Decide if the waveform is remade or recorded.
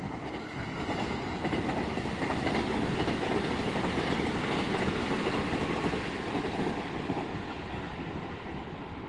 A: recorded